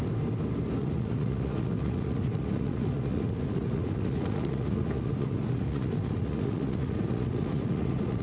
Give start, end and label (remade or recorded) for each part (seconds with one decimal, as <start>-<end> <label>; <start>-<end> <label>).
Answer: 0.0-0.8 recorded; 0.8-8.2 remade